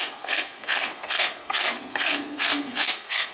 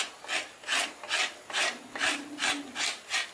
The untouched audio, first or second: second